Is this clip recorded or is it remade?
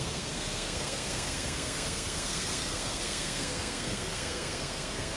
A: remade